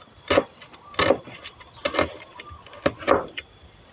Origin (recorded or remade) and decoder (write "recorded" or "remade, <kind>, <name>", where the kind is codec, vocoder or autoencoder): recorded